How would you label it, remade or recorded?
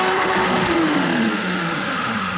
remade